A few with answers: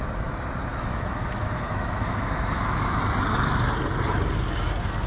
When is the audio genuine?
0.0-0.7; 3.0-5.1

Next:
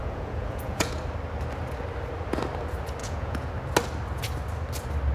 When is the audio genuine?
1.0-3.0; 3.5-5.1

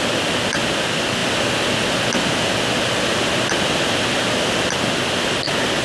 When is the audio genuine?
0.0-5.8

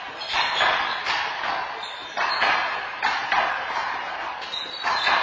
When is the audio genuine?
0.0-2.0

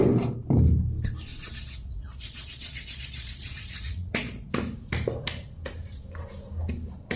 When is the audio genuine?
0.0-1.3; 4.5-7.2

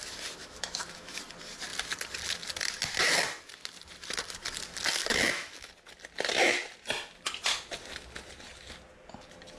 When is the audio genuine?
0.0-0.4; 1.2-5.0; 5.7-9.6

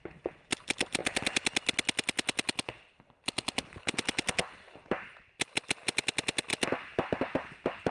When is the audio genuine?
0.0-7.9